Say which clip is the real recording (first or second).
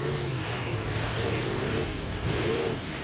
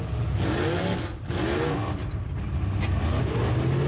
second